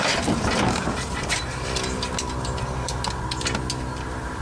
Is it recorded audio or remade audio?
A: recorded